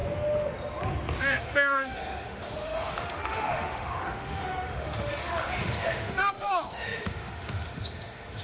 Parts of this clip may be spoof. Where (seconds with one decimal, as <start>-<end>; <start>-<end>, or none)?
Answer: 1.2-8.4